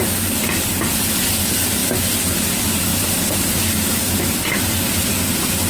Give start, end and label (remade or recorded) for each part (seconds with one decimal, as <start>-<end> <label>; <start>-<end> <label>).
0.0-1.8 recorded; 1.8-2.4 remade; 2.4-5.7 recorded